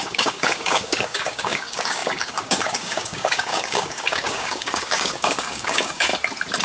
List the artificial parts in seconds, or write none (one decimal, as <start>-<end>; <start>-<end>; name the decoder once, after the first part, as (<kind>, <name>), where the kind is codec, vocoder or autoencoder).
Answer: 0.0-6.1 (codec, DAC)